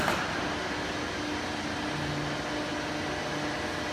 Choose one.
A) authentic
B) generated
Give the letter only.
A